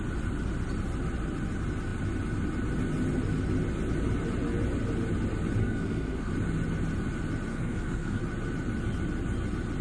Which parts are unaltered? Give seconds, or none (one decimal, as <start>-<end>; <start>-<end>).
0.0-5.6; 6.3-7.5; 8.2-9.8

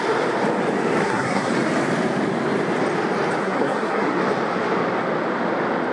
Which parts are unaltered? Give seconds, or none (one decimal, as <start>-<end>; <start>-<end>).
0.0-1.0; 1.5-3.4; 4.2-5.9

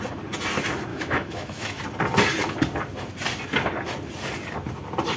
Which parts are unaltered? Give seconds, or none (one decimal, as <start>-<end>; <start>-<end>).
0.0-0.9; 1.8-5.2

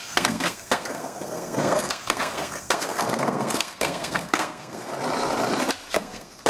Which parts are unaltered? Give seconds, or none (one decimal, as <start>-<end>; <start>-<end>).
4.9-5.9

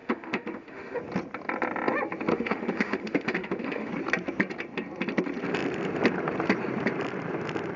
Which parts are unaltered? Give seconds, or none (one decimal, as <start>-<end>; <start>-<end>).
1.0-2.3; 3.9-7.8

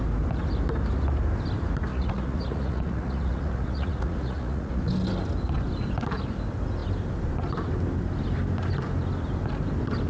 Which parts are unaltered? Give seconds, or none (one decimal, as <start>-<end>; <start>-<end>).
0.0-1.9; 4.8-10.1

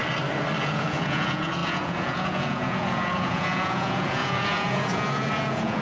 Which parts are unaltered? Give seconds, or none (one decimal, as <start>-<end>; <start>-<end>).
0.0-0.6

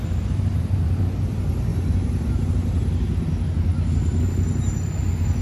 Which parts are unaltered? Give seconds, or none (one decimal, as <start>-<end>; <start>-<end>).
1.0-1.7; 2.5-3.7; 4.2-5.4